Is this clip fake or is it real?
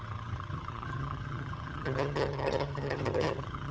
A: fake